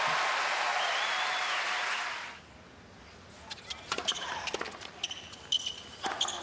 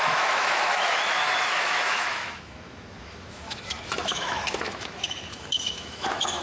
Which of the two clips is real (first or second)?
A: first